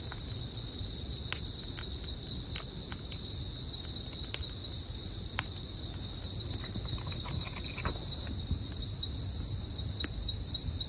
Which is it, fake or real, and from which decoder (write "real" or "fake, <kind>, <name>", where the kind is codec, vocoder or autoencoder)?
real